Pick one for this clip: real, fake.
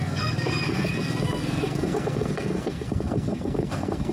fake